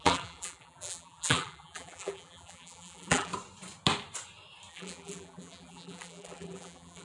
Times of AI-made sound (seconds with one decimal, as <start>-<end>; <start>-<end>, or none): 0.0-3.3; 4.7-7.0